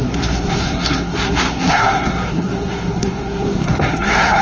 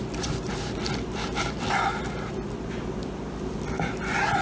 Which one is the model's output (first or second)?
first